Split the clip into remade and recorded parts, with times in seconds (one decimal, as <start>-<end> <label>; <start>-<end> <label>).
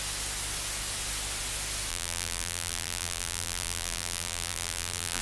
0.0-1.9 recorded; 1.9-5.2 remade